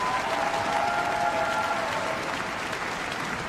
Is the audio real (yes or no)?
yes